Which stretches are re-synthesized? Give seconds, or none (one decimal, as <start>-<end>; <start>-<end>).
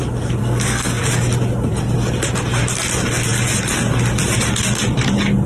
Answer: 0.4-1.0